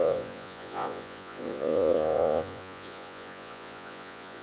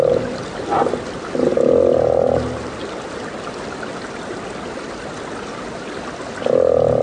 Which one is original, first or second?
second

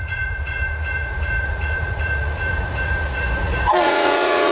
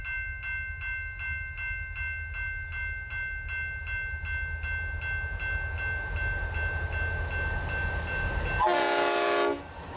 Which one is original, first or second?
second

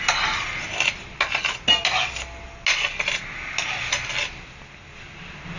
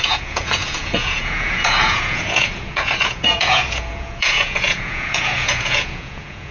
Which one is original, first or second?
first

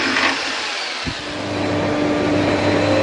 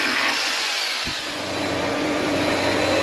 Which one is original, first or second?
first